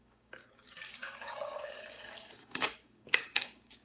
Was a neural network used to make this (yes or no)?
yes